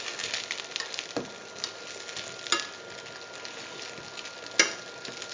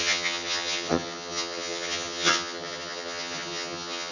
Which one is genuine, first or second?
first